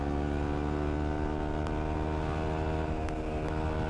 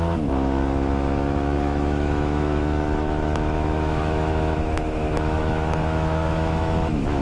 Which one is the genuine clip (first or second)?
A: first